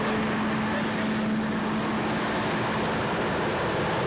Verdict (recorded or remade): recorded